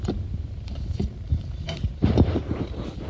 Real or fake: fake